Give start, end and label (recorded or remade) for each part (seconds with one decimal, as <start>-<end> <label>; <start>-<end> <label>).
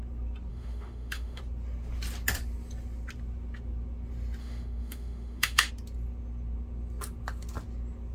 0.0-0.5 recorded; 0.5-1.4 remade; 1.4-4.4 recorded; 4.4-5.7 remade; 5.7-8.1 recorded